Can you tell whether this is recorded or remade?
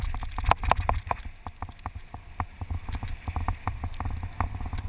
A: recorded